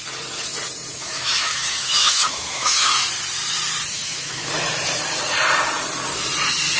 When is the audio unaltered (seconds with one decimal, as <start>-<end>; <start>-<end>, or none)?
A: 0.0-0.9; 3.0-3.9; 4.5-6.8